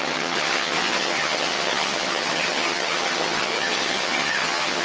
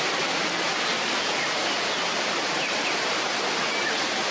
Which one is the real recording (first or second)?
second